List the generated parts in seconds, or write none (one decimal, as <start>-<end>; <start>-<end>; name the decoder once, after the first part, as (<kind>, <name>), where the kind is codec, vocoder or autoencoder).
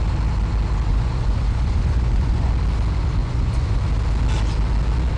0.9-2.5 (vocoder, Vocos); 3.2-3.8